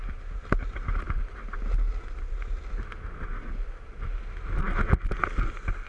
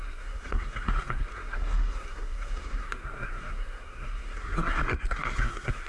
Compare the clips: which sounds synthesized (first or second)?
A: second